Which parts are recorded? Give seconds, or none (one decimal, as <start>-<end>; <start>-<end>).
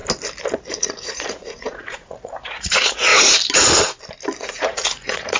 0.0-0.8; 3.1-4.4